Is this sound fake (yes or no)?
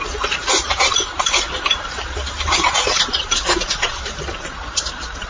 yes